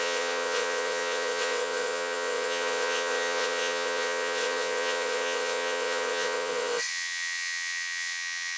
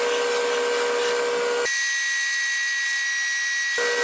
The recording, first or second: second